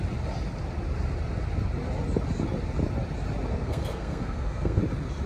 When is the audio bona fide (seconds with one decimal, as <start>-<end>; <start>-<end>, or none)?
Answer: 0.0-3.5; 4.8-5.3